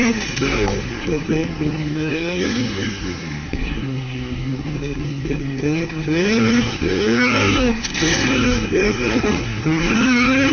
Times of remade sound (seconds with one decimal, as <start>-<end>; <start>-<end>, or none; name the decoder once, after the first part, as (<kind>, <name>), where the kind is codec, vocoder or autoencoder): 0.0-10.5 (codec, SNAC)